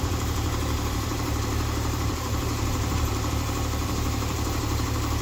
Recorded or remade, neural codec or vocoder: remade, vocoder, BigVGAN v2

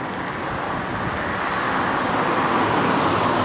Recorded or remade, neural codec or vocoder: recorded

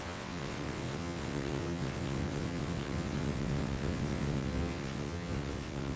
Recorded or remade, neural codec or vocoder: remade, vocoder, WaveNeXt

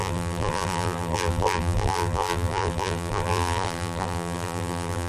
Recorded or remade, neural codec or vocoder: remade, vocoder, BigVGAN v2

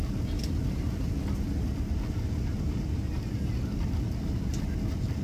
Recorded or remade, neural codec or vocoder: recorded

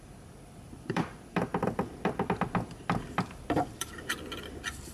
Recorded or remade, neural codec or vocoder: remade, vocoder, BigVGAN v2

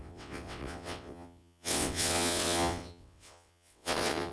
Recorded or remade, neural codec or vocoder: remade, vocoder, WaveNeXt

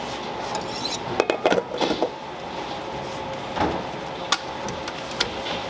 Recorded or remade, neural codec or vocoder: recorded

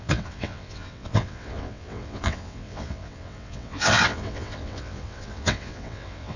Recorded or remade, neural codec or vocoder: remade, vocoder, WaveNeXt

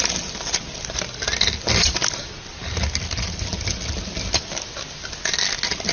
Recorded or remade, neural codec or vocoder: recorded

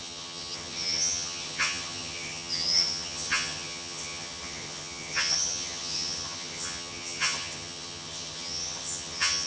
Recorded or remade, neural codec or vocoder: remade, vocoder, HiFi-GAN